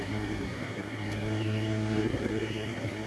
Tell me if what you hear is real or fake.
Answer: fake